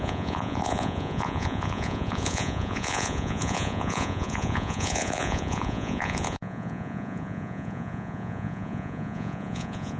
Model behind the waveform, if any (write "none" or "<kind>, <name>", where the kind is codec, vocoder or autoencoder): vocoder, Vocos